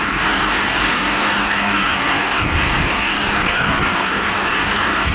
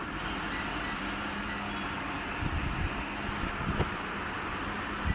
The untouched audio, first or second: second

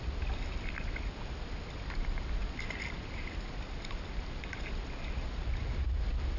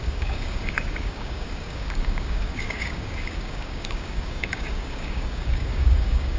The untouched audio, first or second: first